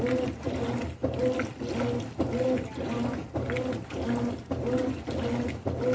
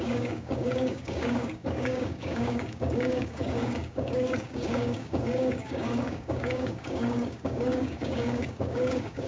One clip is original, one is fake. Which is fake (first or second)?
second